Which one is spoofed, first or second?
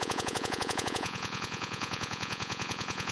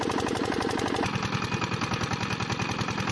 first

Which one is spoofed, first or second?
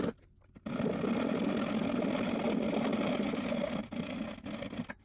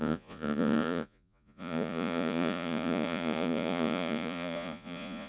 second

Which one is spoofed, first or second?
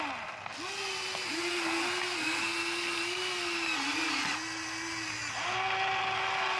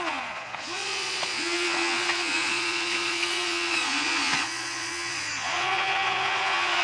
second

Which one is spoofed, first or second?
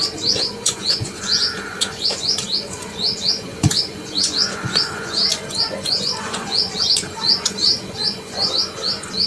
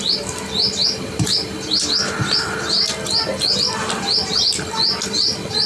first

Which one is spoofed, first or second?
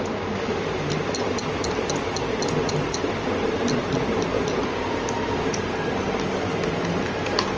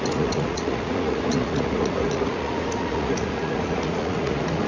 second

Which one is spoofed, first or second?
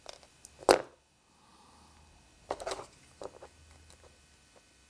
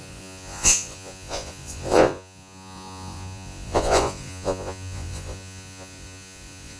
second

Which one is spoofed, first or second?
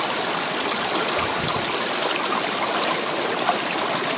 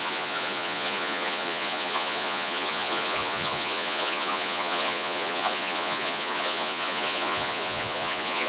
second